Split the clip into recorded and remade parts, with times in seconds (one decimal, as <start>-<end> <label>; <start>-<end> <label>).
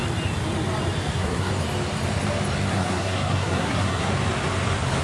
0.0-1.1 recorded; 1.1-1.5 remade; 1.5-2.7 recorded; 2.7-4.1 remade; 4.1-5.0 recorded